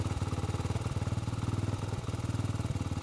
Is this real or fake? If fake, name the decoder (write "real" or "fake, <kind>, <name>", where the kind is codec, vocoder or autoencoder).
real